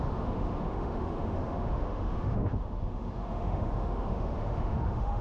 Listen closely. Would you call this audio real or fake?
fake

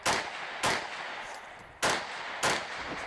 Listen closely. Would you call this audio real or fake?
real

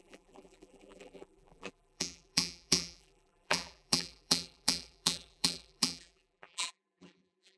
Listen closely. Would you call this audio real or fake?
fake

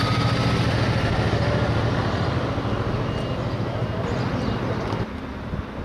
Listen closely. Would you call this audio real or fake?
real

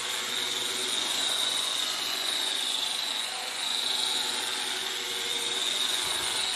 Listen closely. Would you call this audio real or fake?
fake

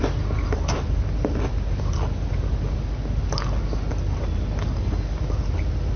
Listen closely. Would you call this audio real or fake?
real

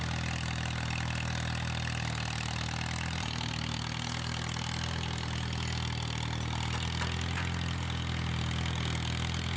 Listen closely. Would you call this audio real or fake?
real